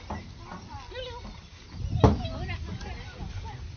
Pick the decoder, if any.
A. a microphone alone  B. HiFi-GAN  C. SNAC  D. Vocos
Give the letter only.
A